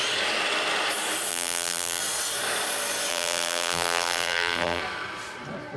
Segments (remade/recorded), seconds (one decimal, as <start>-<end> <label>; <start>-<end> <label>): 0.0-1.3 recorded; 1.3-2.0 remade; 2.0-3.1 recorded; 3.1-4.8 remade; 4.8-5.8 recorded